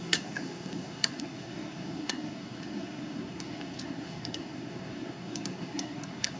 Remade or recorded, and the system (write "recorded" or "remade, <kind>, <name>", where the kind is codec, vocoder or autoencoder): remade, codec, SNAC